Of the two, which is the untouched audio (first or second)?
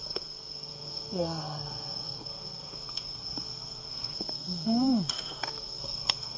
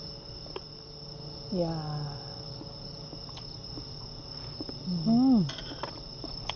second